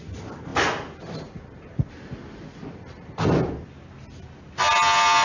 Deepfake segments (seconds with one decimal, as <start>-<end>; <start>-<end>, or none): none